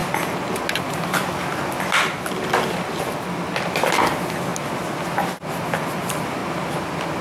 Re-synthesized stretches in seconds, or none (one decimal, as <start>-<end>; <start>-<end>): none